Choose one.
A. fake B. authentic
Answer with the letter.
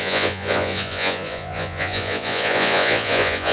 A